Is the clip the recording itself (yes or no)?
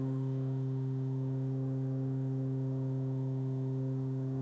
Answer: no